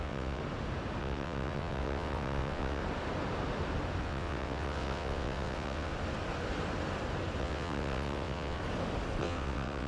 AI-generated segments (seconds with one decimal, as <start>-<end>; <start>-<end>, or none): 0.0-0.4; 1.0-2.8; 4.0-5.9; 7.4-8.6; 9.2-9.9